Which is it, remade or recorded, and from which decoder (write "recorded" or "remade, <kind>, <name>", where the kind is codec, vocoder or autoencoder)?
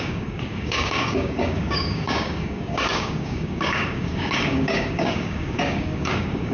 remade, codec, DAC